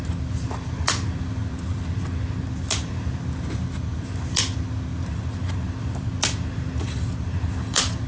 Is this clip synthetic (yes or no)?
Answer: no